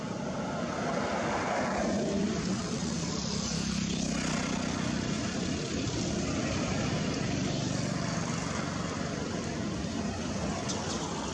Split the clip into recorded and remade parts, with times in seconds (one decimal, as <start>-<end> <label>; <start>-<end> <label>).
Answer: 0.0-2.5 recorded; 2.5-3.1 remade; 3.1-11.3 recorded